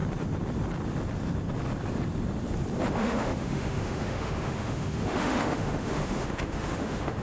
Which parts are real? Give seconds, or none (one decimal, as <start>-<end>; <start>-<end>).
0.0-2.9